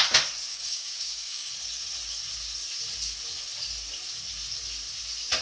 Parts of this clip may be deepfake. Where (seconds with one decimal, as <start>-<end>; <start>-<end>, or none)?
0.5-1.5